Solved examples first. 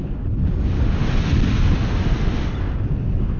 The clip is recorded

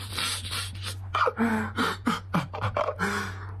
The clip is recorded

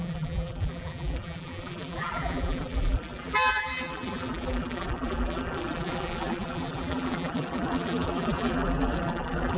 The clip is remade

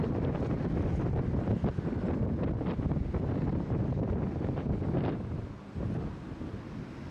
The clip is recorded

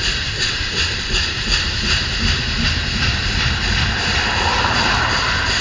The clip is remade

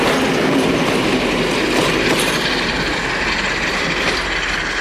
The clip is recorded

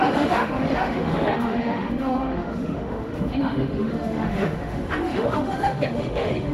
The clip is remade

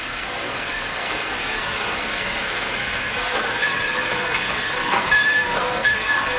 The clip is remade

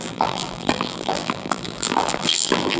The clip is remade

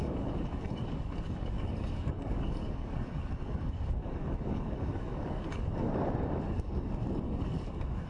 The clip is remade